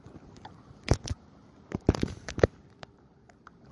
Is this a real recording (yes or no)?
no